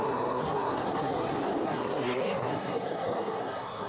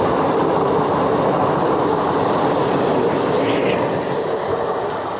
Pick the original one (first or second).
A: second